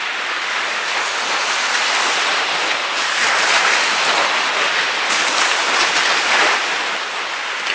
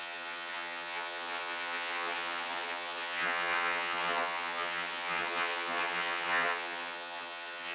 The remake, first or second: second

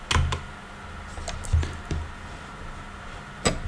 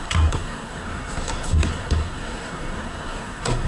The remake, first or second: second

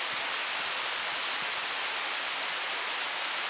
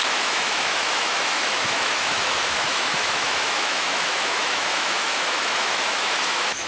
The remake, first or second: second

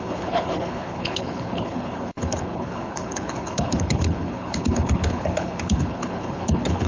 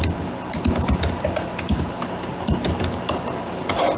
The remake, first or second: first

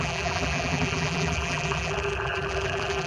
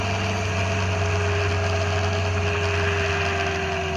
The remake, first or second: first